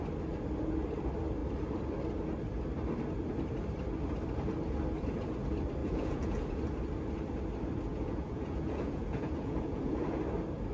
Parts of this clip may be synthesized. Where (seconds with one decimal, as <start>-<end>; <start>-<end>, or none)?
5.8-6.6; 7.9-10.2